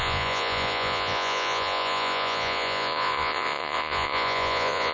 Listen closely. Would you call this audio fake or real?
fake